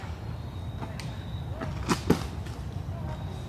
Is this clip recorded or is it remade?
recorded